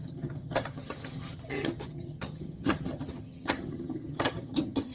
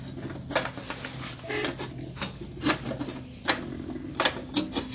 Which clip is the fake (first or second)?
first